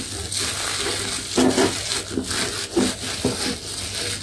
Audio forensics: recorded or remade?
recorded